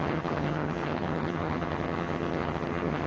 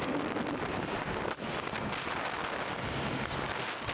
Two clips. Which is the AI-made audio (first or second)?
first